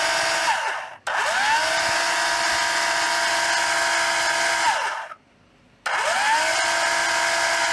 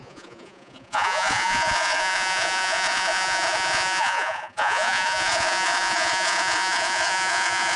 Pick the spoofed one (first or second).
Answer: second